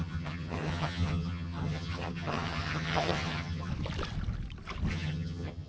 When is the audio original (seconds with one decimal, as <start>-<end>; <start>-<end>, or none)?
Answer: 3.7-4.9